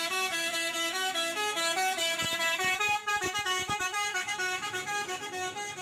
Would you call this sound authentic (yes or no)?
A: no